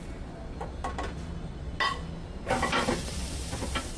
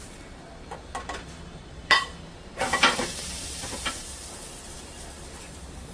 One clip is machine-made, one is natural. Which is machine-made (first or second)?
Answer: second